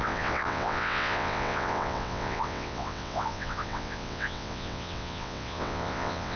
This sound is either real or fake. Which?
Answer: fake